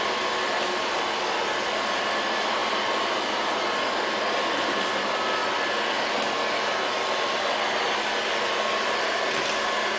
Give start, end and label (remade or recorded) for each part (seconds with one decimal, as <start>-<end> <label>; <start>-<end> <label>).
0.0-10.0 recorded